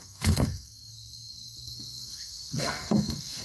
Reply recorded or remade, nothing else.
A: remade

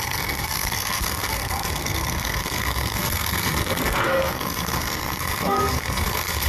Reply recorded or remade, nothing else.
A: remade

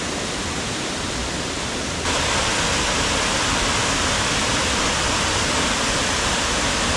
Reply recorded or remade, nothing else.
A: recorded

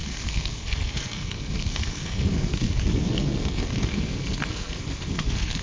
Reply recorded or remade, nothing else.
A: remade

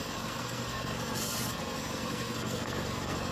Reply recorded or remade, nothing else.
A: remade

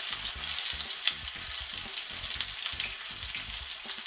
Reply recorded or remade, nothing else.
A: recorded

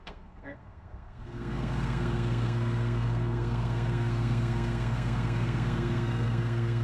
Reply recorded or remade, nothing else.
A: remade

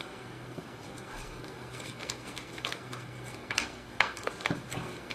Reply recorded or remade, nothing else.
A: remade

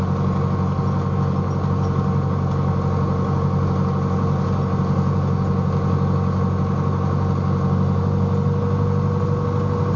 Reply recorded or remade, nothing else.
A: recorded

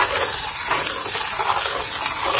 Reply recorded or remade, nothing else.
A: recorded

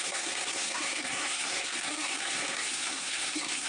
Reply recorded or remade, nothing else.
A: remade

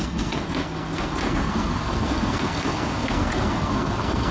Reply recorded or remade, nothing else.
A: remade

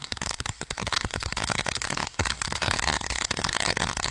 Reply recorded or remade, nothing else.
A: remade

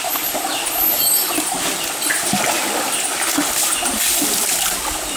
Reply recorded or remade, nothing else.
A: recorded